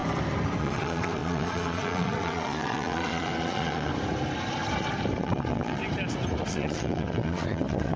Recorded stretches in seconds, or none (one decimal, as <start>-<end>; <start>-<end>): 0.0-0.6; 3.9-5.2; 5.8-6.5